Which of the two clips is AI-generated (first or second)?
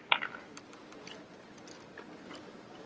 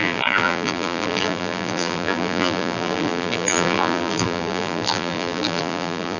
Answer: second